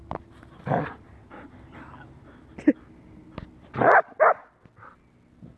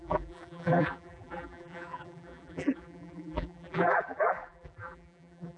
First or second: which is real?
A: first